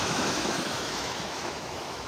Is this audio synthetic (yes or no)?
yes